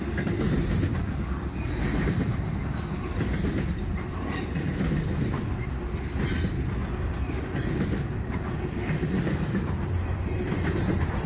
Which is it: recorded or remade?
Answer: recorded